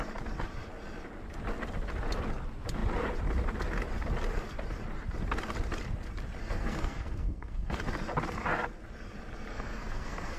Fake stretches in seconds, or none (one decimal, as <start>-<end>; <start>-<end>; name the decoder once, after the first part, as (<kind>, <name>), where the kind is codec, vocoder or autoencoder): 6.4-7.8 (codec, SNAC); 9.5-10.4